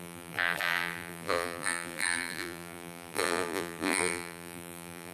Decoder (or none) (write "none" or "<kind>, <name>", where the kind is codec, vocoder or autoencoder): vocoder, BigVGAN v2